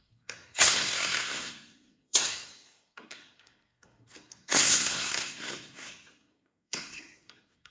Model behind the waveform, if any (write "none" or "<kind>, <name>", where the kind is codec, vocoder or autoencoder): codec, SNAC